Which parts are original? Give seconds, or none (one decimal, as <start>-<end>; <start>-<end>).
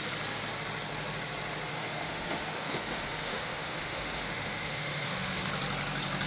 0.0-1.7; 5.5-6.3